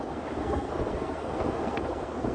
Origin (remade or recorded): remade